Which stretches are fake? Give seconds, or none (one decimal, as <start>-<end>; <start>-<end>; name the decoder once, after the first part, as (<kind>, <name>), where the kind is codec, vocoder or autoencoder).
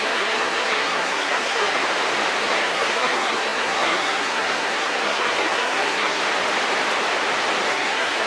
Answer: 0.0-1.8 (codec, SNAC); 2.4-6.2; 7.7-8.3